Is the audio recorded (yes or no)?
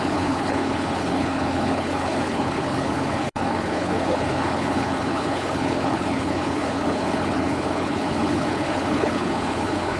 no